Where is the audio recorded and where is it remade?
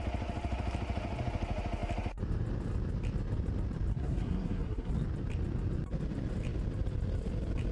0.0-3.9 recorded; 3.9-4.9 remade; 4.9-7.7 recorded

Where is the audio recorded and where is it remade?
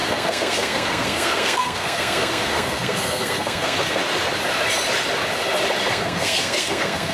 0.0-4.0 remade; 4.0-5.9 recorded; 5.9-7.1 remade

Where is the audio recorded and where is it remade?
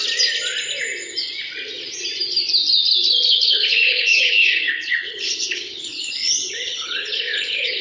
0.0-3.3 recorded; 3.3-7.8 remade